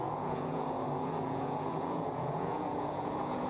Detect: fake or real fake